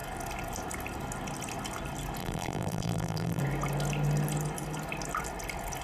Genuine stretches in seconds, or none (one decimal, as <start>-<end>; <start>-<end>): 0.0-2.2; 3.4-5.8